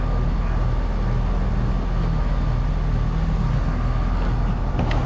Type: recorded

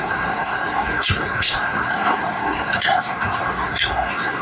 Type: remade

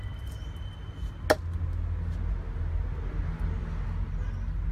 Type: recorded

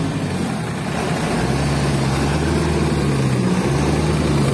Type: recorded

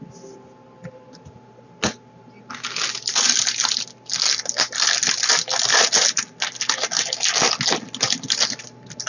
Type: recorded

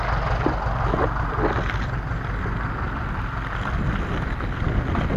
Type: recorded